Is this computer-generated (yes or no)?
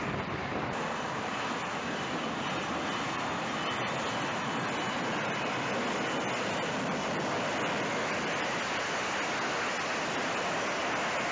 no